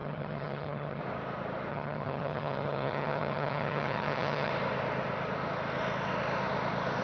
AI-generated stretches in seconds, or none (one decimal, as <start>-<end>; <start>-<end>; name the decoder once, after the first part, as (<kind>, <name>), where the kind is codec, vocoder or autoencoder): 0.0-1.0 (vocoder, HiFi-GAN); 1.7-4.5